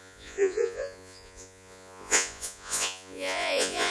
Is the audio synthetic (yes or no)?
yes